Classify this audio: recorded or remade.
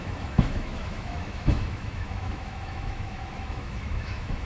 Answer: remade